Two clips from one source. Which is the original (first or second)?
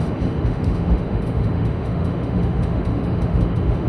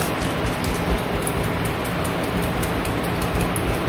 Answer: second